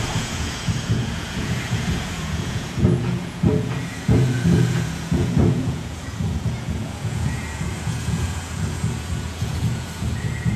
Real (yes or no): no